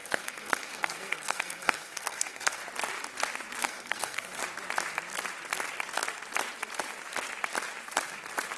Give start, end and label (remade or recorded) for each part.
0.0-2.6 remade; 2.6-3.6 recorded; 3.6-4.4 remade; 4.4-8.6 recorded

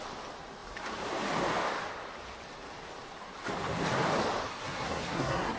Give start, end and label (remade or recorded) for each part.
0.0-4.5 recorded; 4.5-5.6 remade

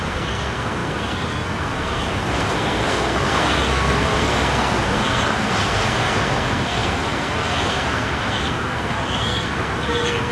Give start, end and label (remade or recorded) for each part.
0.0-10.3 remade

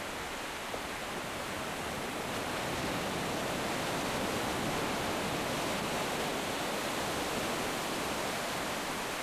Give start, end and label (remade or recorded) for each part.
0.0-1.0 recorded; 1.0-1.7 remade; 1.7-9.2 recorded